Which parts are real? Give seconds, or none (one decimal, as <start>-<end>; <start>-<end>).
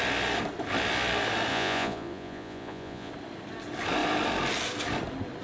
0.0-1.5; 3.1-5.4